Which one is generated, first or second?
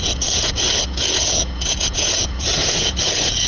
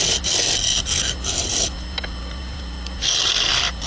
first